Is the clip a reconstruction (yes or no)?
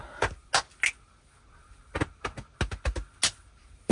no